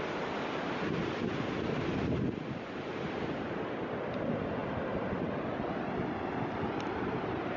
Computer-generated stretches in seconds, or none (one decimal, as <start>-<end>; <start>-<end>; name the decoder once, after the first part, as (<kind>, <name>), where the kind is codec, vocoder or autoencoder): none